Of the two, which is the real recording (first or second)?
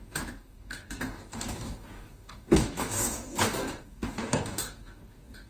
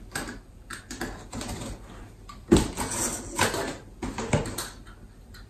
second